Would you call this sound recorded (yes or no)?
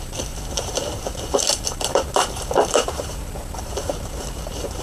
no